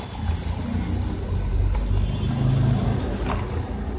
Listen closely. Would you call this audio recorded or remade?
recorded